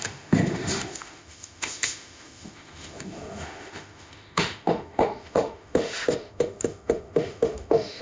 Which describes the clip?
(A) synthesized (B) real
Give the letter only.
A